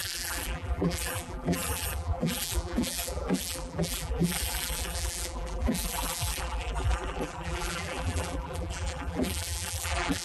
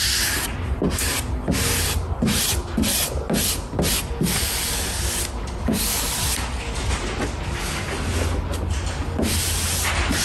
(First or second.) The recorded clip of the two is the second